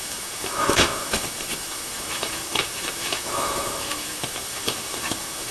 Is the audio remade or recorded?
remade